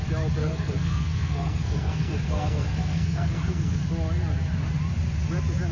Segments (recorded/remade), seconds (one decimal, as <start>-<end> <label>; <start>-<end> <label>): 0.0-0.4 recorded; 0.4-3.8 remade; 3.8-5.7 recorded